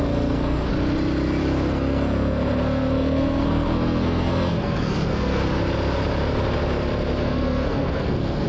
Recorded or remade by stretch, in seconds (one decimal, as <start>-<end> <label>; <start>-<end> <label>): 0.0-0.7 remade; 0.7-1.4 recorded; 1.4-5.4 remade; 5.4-7.2 recorded; 7.2-8.5 remade